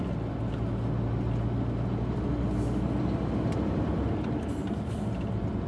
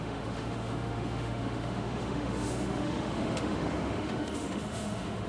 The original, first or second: first